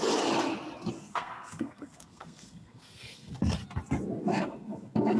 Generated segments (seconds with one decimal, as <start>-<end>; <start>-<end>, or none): 1.0-3.3; 4.3-5.2